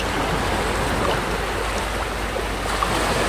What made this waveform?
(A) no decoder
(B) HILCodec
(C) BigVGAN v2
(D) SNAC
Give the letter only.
A